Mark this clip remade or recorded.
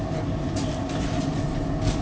recorded